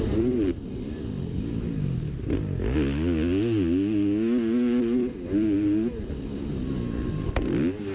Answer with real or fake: real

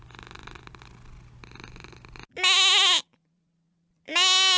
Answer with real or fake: real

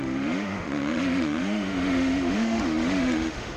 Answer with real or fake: fake